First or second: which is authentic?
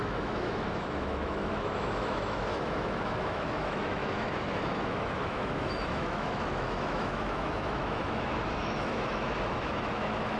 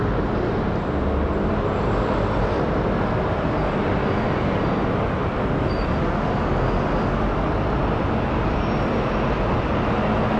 second